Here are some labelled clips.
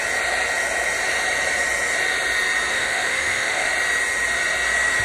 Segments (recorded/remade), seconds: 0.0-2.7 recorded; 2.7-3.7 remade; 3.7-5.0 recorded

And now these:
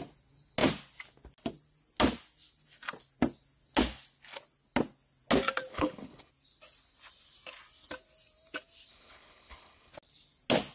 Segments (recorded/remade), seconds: 0.0-5.7 recorded; 5.7-6.3 remade; 6.3-8.9 recorded; 8.9-9.9 remade; 9.9-10.7 recorded